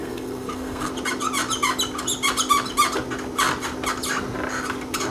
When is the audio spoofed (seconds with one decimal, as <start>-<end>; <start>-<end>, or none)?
0.0-0.9